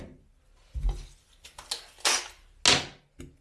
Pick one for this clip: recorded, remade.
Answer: recorded